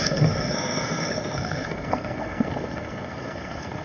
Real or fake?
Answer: fake